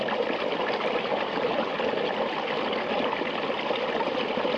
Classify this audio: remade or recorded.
remade